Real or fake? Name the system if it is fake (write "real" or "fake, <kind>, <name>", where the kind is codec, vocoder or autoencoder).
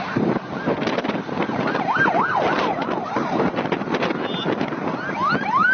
real